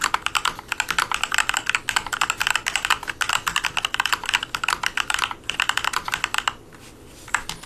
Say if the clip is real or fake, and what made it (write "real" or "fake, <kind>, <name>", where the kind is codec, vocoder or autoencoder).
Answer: real